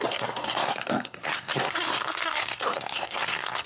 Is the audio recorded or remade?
remade